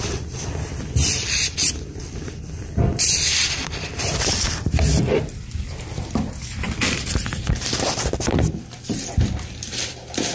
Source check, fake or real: fake